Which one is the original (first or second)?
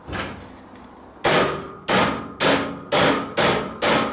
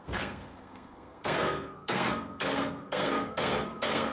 first